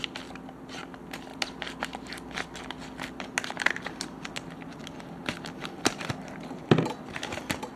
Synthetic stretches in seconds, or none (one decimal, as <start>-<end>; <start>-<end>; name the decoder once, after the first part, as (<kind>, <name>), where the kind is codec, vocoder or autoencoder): none